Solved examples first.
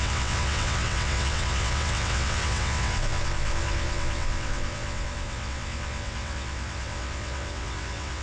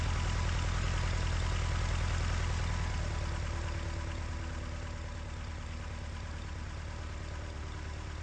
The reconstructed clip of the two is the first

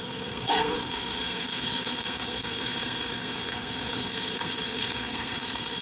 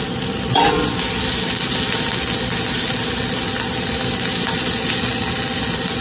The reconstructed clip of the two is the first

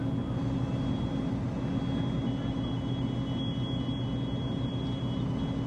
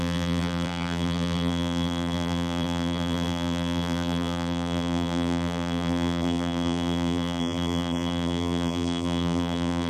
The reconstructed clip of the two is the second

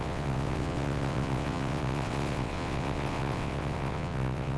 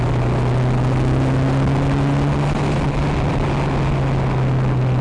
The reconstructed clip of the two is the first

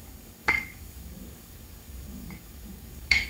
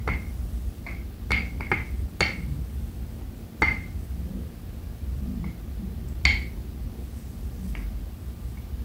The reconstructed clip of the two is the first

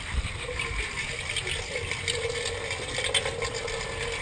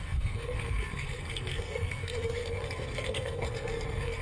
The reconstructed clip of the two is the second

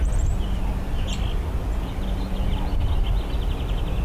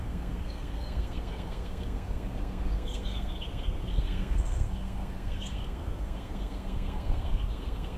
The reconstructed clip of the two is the second